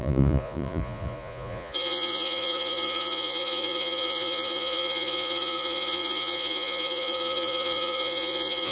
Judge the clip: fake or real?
fake